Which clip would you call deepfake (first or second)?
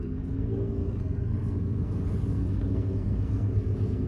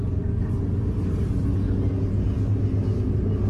first